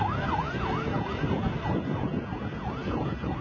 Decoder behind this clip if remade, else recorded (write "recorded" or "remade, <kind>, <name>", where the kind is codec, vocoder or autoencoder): recorded